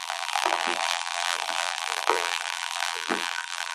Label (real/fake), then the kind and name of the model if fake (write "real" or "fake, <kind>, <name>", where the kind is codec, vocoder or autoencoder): fake, vocoder, BigVGAN v2